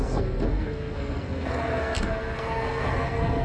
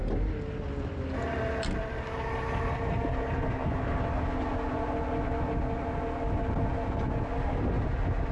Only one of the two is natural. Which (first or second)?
second